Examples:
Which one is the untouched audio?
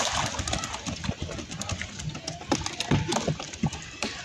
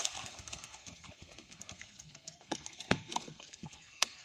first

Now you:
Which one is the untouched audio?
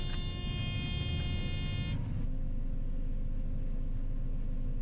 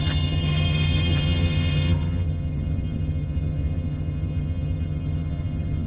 first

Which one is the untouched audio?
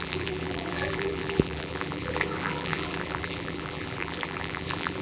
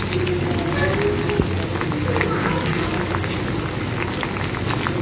second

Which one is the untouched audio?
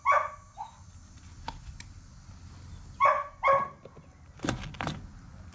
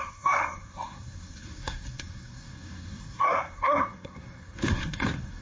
first